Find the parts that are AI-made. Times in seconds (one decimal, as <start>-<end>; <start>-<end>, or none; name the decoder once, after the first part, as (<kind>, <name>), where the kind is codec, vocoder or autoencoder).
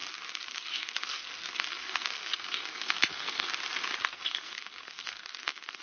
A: 0.0-3.5 (codec, SNAC); 4.0-5.8